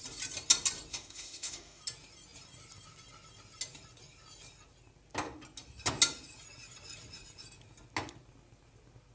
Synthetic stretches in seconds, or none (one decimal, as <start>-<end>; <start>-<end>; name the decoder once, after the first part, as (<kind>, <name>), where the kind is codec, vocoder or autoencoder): 0.9-1.8 (autoencoder, DAC-VAE)